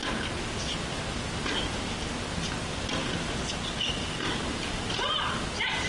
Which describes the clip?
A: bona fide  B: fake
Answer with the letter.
A